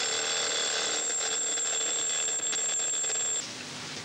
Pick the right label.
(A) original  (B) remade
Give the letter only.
A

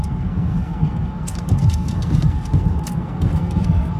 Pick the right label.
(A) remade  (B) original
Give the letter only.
A